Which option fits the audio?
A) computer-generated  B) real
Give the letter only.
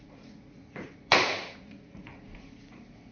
A